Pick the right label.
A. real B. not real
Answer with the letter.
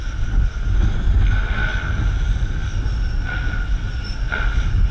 A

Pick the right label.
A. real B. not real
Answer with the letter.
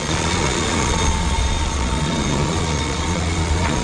B